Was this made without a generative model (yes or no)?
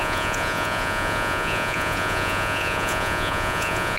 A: no